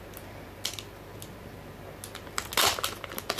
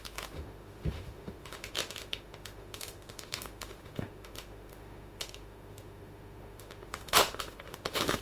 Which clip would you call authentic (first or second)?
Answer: first